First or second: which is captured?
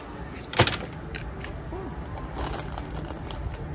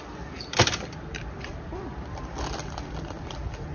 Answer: first